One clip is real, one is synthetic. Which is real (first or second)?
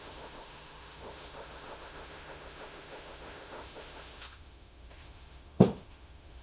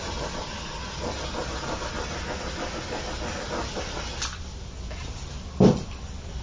second